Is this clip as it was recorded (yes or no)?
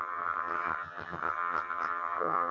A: no